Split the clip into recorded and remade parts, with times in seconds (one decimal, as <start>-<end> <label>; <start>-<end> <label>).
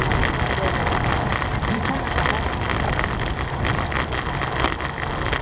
0.0-5.4 recorded